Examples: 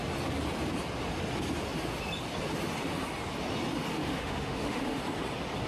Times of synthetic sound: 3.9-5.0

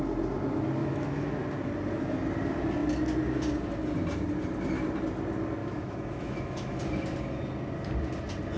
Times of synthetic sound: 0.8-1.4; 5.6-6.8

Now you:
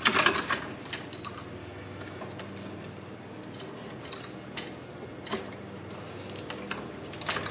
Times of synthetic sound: 1.6-2.2

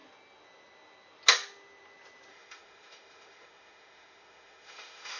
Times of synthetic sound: 2.3-5.2